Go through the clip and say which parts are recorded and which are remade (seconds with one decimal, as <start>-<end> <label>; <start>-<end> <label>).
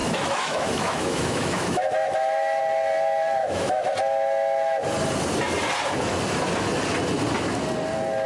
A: 0.0-2.6 remade; 2.6-3.4 recorded; 3.4-3.9 remade; 3.9-8.3 recorded